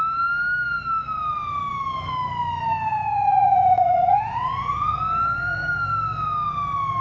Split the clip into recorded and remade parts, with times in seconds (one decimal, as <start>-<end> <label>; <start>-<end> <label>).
0.0-2.9 recorded; 2.9-5.0 remade; 5.0-7.0 recorded